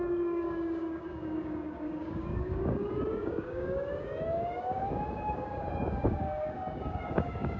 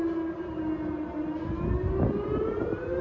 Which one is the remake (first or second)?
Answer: first